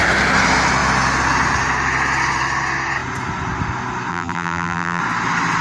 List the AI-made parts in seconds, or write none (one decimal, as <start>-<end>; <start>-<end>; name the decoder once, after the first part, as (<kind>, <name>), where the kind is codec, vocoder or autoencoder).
4.1-5.0 (vocoder, BigVGAN v2)